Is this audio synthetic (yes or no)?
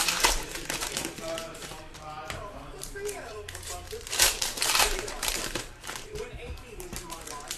yes